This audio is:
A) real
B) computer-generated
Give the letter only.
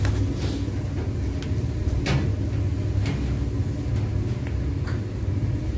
A